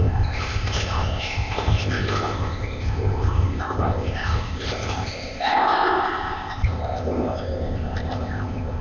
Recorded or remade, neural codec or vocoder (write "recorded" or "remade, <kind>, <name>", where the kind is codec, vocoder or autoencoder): remade, codec, ZipCodec